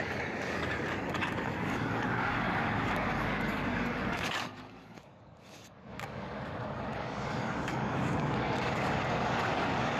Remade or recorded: remade